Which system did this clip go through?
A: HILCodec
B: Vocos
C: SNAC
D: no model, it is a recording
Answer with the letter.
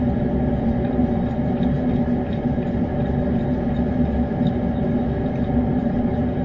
D